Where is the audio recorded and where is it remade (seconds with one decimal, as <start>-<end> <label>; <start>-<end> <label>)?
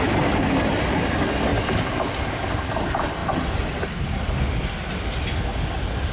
0.0-6.1 recorded